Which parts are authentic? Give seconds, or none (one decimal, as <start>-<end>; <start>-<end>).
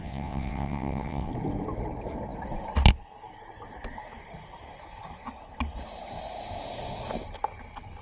1.3-8.0